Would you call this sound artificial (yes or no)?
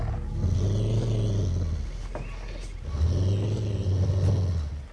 no